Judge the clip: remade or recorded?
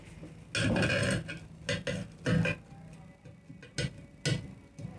recorded